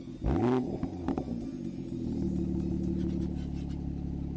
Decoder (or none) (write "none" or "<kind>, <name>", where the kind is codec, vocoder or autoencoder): none